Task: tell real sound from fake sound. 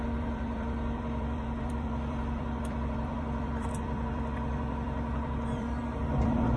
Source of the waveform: fake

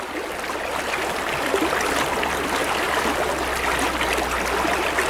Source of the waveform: real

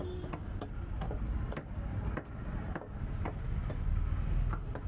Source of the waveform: real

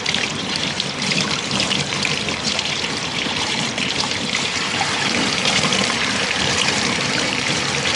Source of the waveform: fake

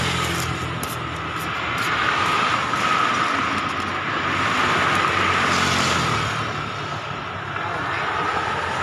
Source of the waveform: real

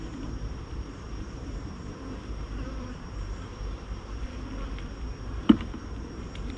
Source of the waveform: fake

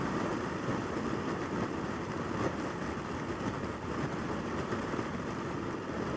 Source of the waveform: real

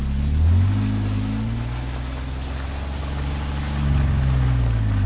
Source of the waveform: real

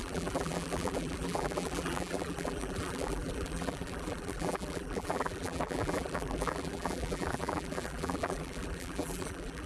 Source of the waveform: fake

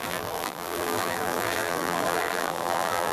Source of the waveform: fake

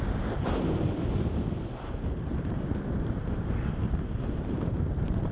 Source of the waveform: fake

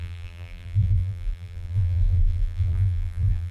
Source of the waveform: fake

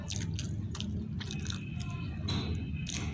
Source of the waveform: real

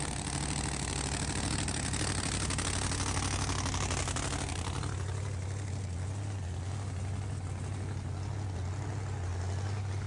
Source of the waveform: real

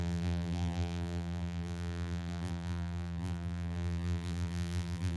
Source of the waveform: fake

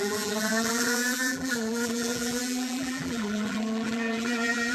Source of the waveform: fake